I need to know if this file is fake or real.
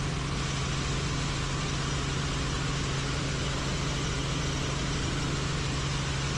real